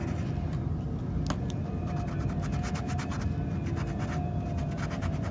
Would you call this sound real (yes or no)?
yes